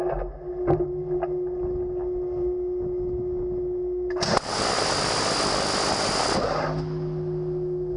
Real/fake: real